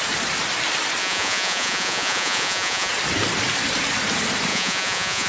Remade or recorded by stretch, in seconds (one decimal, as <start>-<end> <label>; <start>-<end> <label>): 0.0-1.0 recorded; 1.0-2.9 remade; 2.9-4.5 recorded; 4.5-5.3 remade

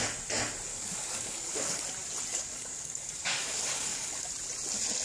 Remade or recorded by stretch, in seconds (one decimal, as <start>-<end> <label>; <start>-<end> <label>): 0.0-0.7 recorded; 0.7-1.8 remade; 1.8-2.3 recorded; 2.3-4.3 remade; 4.3-5.0 recorded

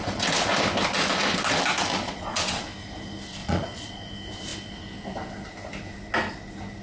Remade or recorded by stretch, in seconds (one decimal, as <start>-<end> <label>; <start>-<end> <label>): 0.0-1.9 recorded; 1.9-2.6 remade; 2.6-3.4 recorded; 3.4-3.9 remade; 3.9-6.8 recorded

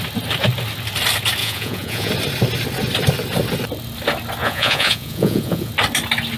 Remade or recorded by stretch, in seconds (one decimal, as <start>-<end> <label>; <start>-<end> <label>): 0.0-1.4 recorded; 1.4-2.1 remade; 2.1-4.4 recorded; 4.4-5.7 remade; 5.7-6.4 recorded

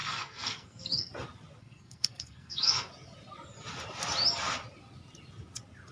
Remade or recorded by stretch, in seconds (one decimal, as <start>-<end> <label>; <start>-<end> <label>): 0.0-1.1 remade; 1.1-1.6 recorded; 1.6-2.9 remade; 2.9-5.9 recorded

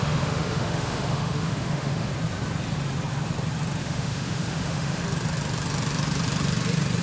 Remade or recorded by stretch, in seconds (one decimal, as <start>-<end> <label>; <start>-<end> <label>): 0.0-2.1 remade; 2.1-3.8 recorded; 3.8-5.0 remade; 5.0-7.0 recorded